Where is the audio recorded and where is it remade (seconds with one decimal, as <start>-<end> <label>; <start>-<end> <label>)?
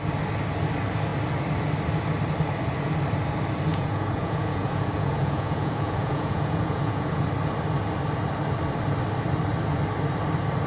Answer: 0.0-3.7 recorded; 3.7-7.3 remade; 7.3-10.7 recorded